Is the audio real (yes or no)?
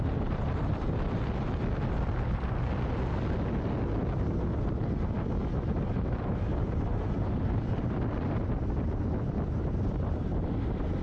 yes